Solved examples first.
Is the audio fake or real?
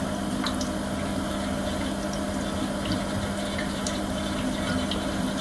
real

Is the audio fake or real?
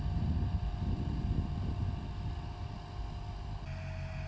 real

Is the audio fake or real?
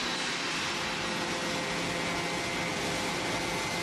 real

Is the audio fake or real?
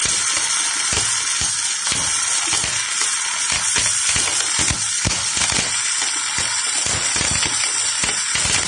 real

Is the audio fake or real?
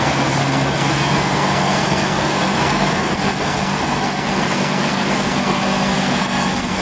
fake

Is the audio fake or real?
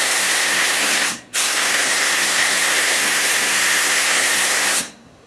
fake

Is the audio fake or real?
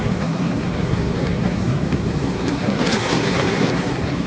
fake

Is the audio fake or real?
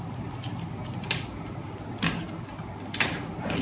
real